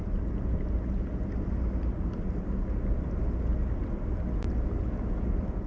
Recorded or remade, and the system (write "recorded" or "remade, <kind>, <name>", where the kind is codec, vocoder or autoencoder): recorded